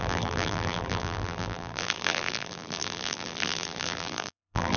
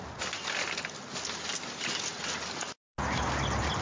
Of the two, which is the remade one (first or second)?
first